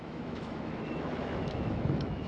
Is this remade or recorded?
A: remade